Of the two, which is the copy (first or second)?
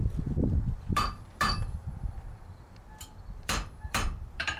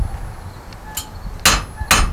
first